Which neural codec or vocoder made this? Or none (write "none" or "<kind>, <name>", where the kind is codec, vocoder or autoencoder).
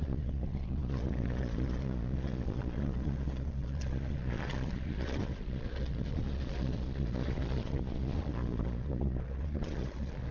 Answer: vocoder, Vocos